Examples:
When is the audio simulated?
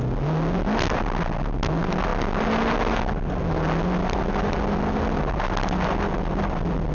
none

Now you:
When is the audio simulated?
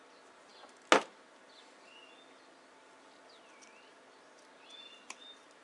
none